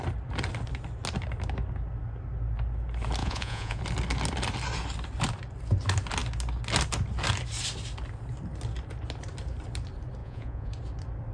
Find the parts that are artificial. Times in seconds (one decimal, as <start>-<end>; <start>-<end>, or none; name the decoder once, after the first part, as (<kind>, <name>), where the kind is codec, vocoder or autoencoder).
3.2-3.8 (vocoder, Vocos); 10.2-10.7